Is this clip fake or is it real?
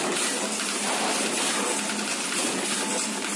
real